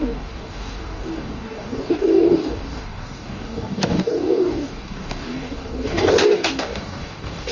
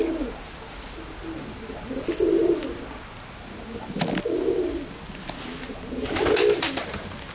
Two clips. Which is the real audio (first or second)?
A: second